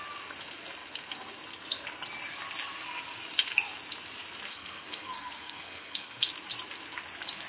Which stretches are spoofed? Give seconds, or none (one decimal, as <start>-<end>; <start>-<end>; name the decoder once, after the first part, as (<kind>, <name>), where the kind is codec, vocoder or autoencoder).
4.5-6.3 (codec, SNAC)